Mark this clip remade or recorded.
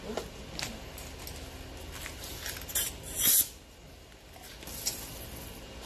recorded